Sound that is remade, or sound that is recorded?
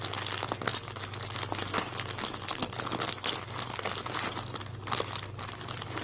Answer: recorded